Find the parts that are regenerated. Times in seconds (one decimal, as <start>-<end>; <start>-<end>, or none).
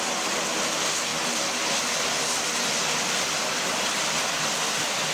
0.0-5.1